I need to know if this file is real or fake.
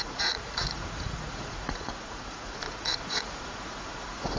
fake